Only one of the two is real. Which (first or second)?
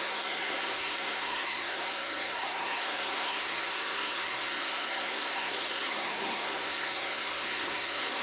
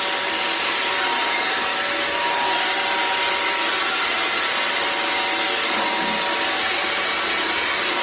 second